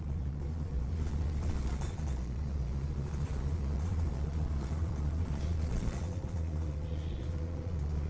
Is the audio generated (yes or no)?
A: yes